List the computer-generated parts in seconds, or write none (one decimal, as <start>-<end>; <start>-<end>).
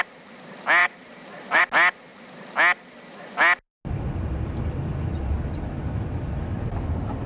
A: 0.8-1.6